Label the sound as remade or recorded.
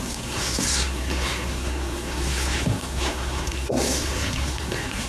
remade